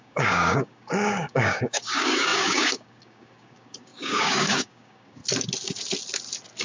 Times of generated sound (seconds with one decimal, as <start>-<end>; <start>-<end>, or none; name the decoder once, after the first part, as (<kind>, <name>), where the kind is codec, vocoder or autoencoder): 0.0-5.2 (codec, DAC)